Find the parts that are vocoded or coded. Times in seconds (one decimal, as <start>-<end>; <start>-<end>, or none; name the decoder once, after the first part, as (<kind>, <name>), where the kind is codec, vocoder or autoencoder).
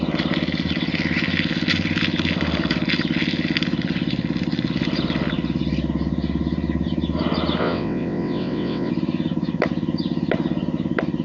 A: 7.6-8.9 (vocoder, WaveNeXt)